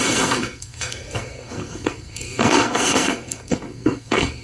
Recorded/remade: remade